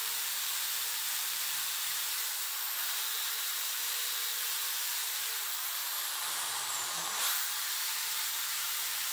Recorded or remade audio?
remade